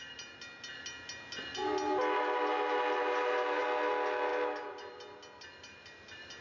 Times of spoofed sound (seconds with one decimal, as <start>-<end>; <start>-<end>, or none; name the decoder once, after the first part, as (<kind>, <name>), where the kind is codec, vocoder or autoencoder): none